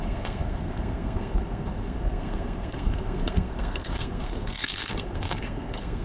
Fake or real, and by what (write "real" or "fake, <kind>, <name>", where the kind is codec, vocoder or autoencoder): fake, codec, SNAC